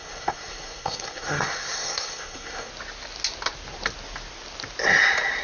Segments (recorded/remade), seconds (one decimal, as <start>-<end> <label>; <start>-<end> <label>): 0.0-2.7 remade; 2.7-5.4 recorded